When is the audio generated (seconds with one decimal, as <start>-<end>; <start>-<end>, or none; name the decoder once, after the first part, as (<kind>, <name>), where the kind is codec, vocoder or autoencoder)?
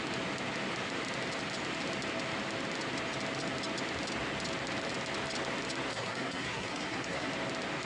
5.9-7.3 (codec, SNAC)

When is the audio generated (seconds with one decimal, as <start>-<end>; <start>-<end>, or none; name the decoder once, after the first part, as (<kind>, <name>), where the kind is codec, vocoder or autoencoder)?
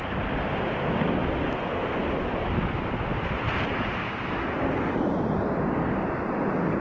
none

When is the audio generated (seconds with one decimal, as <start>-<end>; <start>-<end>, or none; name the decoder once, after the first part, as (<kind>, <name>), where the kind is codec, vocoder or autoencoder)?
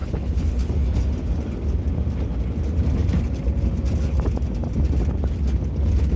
0.0-1.0 (codec, HILCodec)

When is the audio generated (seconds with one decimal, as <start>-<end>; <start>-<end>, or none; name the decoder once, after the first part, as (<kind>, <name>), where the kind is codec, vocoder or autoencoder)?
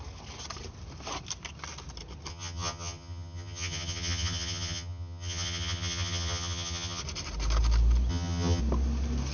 2.3-7.0 (vocoder, HiFi-GAN); 8.1-8.6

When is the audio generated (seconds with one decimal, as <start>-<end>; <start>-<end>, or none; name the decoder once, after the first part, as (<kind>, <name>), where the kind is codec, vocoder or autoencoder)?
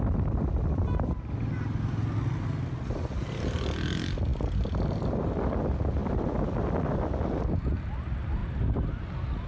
none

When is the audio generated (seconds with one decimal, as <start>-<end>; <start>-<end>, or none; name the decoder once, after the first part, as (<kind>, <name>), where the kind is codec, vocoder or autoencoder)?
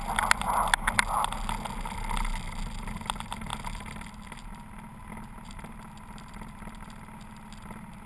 none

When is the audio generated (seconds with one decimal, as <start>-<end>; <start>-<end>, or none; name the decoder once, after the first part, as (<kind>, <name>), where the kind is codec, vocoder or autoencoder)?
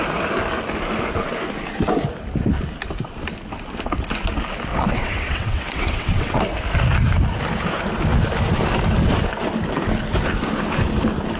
4.7-6.4 (vocoder, WaveNeXt)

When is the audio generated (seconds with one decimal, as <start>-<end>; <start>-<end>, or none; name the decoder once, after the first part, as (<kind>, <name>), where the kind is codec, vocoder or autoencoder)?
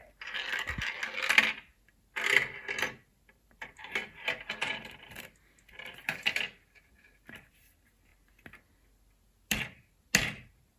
3.1-5.7 (vocoder, BigVGAN v2)